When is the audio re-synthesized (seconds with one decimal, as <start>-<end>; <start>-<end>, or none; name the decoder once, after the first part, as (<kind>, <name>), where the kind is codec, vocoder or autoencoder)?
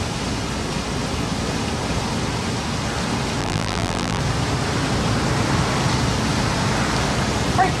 3.4-4.2 (vocoder, BigVGAN v2)